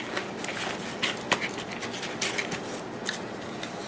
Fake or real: real